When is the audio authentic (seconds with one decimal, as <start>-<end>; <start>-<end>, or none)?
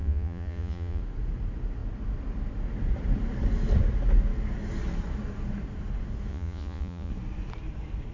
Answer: 1.0-6.3; 7.1-8.1